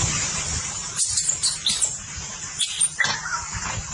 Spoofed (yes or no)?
yes